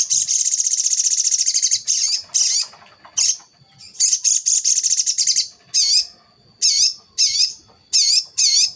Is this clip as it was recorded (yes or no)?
yes